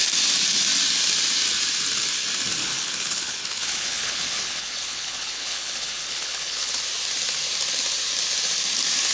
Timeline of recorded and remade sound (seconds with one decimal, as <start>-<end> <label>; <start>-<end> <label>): 0.0-2.6 recorded; 2.6-6.8 remade; 6.8-9.1 recorded

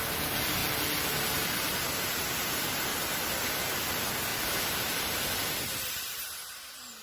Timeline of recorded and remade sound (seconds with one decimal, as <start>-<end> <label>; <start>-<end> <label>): 0.0-0.6 remade; 0.6-1.2 recorded; 1.2-2.9 remade; 2.9-3.9 recorded; 3.9-4.3 remade; 4.3-4.8 recorded; 4.8-7.0 remade